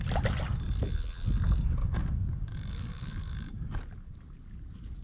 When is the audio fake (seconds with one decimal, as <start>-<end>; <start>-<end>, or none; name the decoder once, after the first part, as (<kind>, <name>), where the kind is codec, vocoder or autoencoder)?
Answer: 1.8-3.8 (codec, DAC)